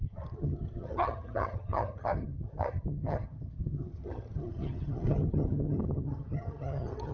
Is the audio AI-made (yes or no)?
yes